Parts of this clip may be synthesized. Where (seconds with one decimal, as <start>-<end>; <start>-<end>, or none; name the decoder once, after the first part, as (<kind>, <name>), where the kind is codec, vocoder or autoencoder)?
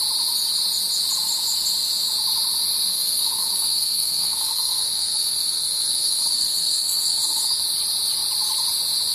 2.9-7.6 (codec, SNAC)